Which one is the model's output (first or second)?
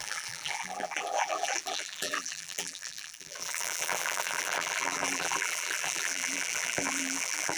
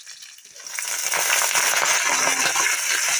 first